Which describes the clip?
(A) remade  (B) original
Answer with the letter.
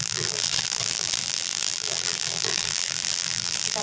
A